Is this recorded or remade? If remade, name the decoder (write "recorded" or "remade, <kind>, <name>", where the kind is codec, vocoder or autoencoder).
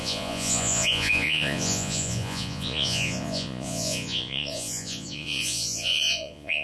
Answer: remade, vocoder, Vocos